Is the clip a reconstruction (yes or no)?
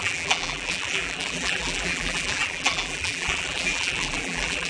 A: yes